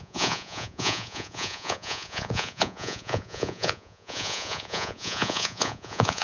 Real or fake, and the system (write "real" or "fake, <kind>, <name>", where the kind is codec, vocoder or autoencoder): fake, vocoder, Vocos